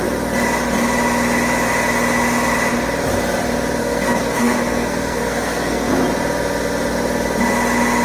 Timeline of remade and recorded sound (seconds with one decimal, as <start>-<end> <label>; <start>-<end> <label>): 0.0-3.8 recorded; 3.8-5.9 remade; 5.9-8.0 recorded